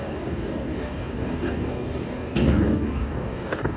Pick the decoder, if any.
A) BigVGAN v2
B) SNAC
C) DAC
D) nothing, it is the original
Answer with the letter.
C